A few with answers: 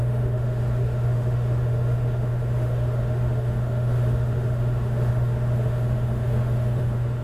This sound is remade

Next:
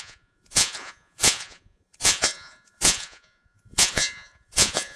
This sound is remade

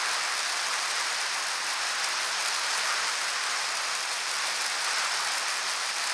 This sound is recorded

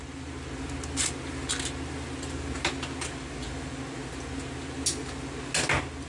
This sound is recorded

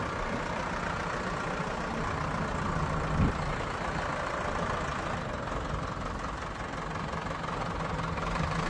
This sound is recorded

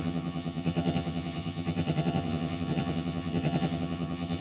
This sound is remade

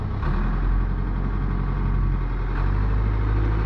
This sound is recorded